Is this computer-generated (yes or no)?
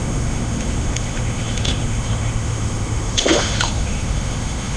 yes